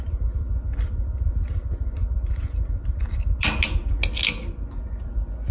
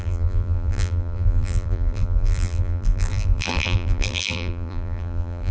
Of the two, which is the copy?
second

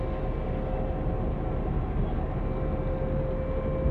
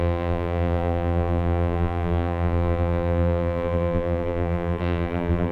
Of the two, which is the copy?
second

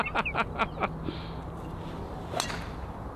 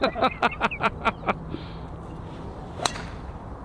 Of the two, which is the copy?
second